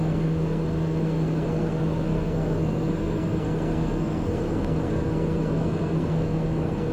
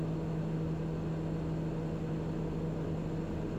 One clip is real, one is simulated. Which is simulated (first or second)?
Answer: first